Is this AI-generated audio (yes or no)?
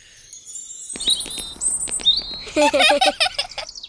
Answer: no